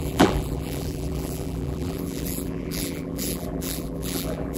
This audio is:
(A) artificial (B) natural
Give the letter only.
A